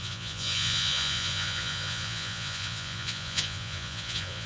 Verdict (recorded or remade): remade